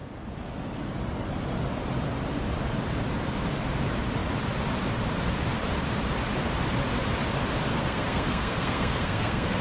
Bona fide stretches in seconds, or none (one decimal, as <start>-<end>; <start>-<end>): 0.0-7.7